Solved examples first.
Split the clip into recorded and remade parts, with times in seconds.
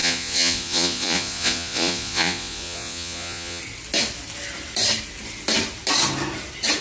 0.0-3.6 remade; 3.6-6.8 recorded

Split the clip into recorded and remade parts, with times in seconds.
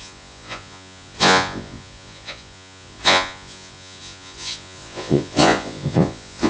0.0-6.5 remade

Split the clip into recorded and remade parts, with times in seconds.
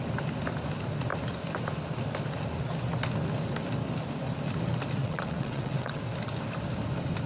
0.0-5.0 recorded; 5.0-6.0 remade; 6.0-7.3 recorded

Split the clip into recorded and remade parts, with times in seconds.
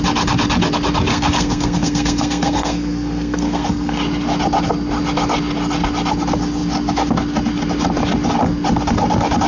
0.0-1.1 recorded; 1.1-4.0 remade; 4.0-9.5 recorded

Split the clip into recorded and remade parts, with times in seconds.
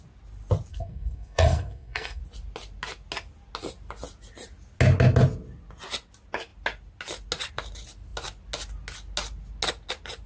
0.0-0.7 recorded; 0.7-2.2 remade; 2.2-10.3 recorded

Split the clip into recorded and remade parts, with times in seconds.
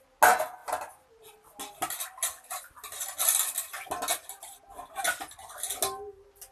0.0-6.5 recorded